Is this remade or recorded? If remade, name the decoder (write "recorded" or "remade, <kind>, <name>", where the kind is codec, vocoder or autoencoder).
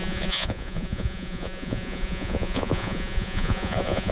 remade, vocoder, Vocos